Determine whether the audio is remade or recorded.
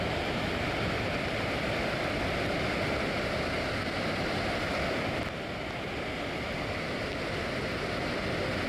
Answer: recorded